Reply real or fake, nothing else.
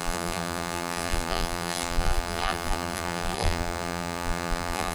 fake